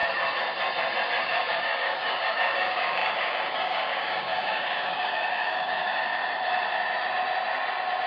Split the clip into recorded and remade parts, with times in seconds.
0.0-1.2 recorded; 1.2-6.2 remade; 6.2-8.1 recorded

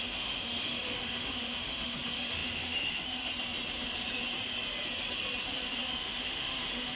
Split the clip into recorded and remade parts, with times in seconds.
0.0-3.3 remade; 3.3-5.8 recorded; 5.8-7.0 remade

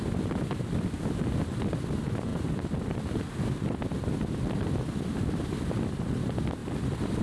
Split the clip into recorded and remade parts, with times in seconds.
0.0-7.2 recorded

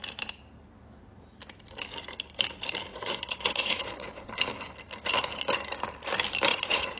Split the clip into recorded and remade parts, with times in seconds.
0.0-2.9 recorded; 2.9-4.3 remade; 4.3-6.5 recorded; 6.5-7.0 remade

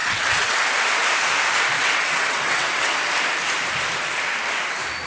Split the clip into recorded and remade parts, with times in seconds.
0.0-0.6 remade; 0.6-1.8 recorded; 1.8-2.9 remade; 2.9-5.1 recorded